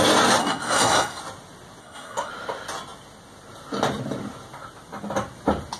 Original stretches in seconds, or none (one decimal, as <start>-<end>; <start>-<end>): 0.0-0.4; 1.2-1.8; 2.3-5.8